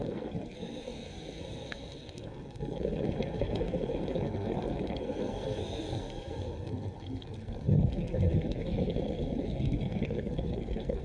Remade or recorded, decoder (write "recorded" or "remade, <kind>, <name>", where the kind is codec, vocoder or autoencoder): remade, codec, SNAC